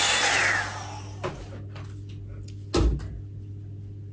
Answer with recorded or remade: recorded